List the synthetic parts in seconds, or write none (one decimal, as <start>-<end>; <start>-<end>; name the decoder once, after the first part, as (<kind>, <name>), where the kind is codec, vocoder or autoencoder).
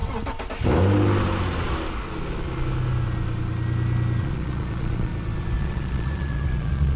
4.2-5.1 (vocoder, Vocos); 5.6-7.0